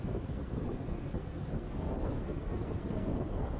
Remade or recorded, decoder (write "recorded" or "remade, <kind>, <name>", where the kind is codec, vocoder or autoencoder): remade, codec, SNAC